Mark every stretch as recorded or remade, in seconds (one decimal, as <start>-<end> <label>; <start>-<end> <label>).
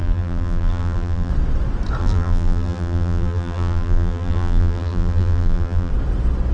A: 0.0-1.3 remade; 1.3-2.0 recorded; 2.0-5.9 remade; 5.9-6.5 recorded